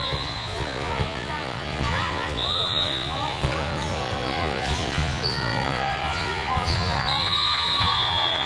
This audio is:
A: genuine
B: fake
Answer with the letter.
B